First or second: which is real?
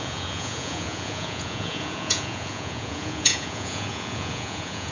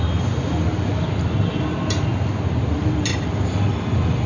second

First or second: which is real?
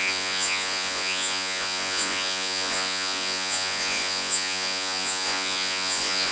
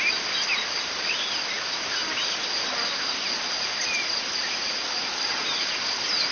second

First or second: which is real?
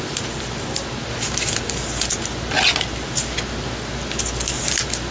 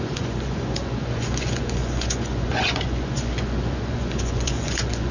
first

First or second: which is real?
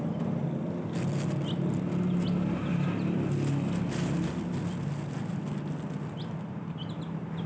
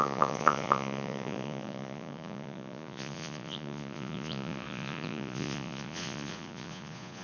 first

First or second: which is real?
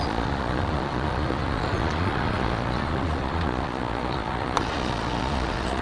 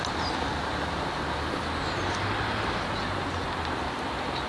second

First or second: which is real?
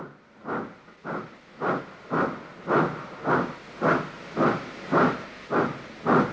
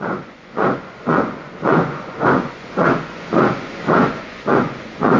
first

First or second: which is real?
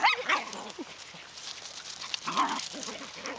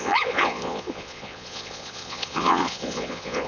first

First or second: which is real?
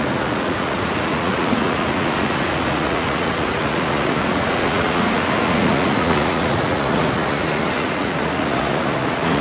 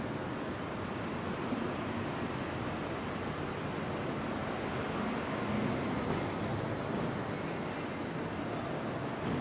second